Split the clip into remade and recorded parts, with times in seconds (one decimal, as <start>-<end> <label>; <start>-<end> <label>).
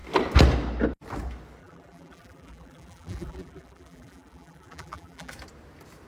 0.0-1.6 recorded; 1.6-5.3 remade; 5.3-6.1 recorded